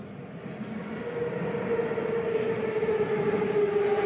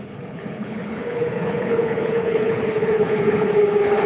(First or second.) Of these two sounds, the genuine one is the first